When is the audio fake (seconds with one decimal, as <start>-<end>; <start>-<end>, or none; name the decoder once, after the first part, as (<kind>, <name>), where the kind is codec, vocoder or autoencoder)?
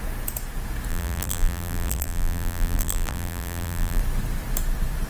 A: 0.9-4.0 (vocoder, BigVGAN v2)